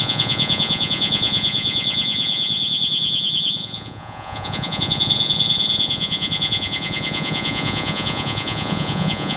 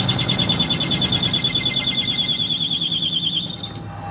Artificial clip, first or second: first